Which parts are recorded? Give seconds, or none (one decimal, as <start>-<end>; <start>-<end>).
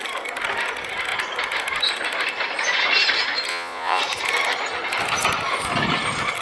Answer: 0.0-3.5; 4.0-6.4